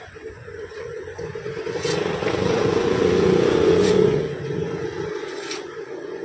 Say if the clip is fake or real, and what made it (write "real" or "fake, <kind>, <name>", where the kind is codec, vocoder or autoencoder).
fake, vocoder, Vocos